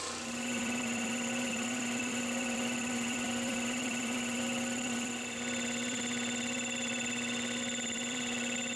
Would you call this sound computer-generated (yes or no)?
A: yes